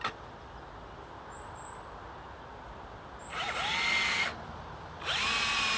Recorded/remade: recorded